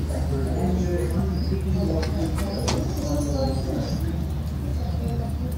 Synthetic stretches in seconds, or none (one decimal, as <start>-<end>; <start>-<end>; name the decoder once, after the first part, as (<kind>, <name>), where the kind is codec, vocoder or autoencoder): 3.4-4.0 (vocoder, Vocos)